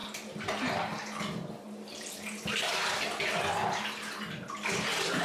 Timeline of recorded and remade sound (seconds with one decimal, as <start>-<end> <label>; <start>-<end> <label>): 0.0-5.2 recorded